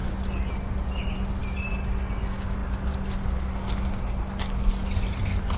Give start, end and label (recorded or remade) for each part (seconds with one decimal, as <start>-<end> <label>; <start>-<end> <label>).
0.0-5.6 recorded